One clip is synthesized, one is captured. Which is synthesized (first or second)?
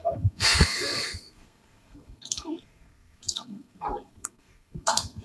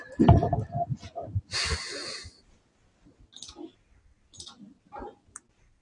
first